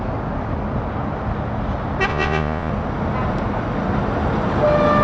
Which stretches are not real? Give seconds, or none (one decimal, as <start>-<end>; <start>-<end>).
2.1-2.7